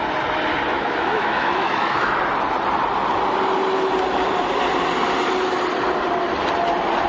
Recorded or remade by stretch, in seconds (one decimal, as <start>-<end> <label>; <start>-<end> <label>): 0.0-0.7 recorded; 0.7-2.2 remade; 2.2-7.1 recorded